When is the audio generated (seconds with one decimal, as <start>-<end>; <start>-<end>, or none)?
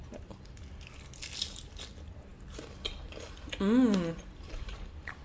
0.0-5.2